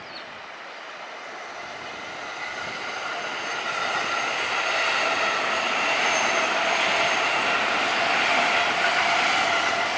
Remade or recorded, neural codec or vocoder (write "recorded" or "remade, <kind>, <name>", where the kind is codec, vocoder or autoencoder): recorded